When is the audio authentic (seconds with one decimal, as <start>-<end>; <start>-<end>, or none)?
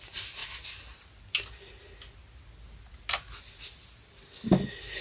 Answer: 0.0-5.0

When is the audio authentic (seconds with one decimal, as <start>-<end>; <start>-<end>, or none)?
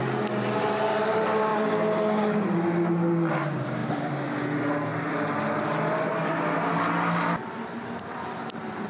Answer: 0.0-8.9